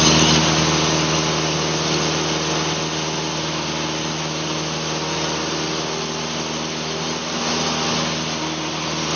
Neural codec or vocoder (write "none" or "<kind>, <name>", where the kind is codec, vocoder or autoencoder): none